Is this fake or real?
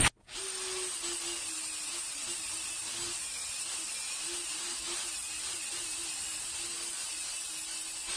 real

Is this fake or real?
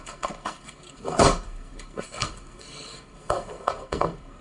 fake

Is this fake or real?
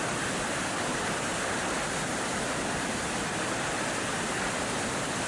real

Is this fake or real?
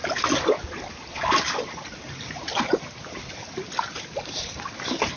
real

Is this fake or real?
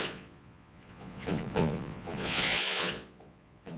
fake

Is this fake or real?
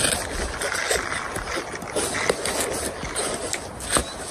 real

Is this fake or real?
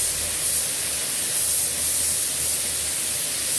real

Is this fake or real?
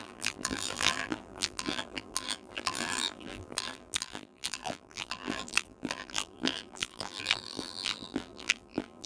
fake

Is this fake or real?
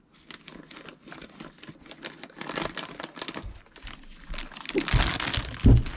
real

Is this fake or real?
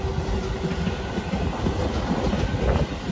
real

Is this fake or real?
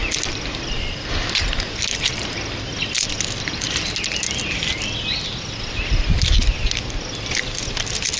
real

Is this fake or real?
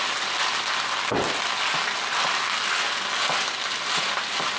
real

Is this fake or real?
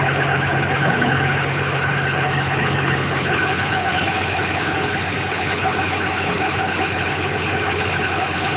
fake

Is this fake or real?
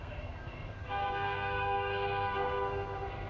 fake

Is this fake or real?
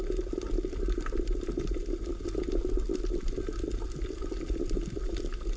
real